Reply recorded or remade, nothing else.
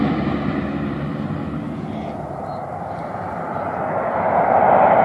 recorded